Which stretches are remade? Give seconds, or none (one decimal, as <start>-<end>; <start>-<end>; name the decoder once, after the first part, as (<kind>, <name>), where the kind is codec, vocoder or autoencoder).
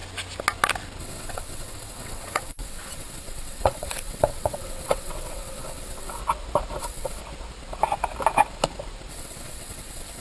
1.0-6.2 (vocoder, WaveNeXt); 6.8-7.2; 9.1-10.2